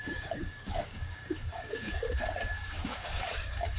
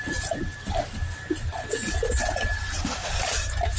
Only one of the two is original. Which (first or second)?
second